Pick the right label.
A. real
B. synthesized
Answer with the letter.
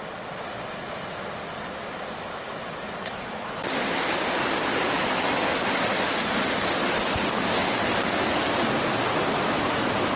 A